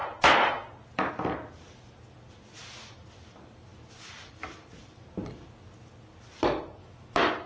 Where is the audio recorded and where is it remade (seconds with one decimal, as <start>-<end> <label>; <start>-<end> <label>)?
0.0-7.5 recorded